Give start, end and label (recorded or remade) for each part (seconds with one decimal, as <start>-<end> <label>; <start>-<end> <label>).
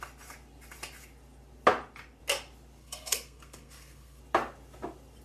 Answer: 0.0-2.8 recorded; 2.8-4.2 remade; 4.2-5.2 recorded